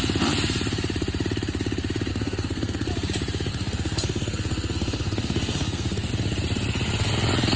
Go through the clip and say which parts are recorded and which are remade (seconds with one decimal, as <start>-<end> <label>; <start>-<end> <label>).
0.0-2.1 recorded; 2.1-2.9 remade; 2.9-3.5 recorded; 3.5-6.1 remade; 6.1-7.6 recorded